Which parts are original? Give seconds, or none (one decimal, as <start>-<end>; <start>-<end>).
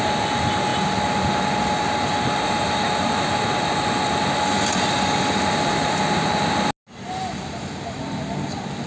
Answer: 0.0-8.9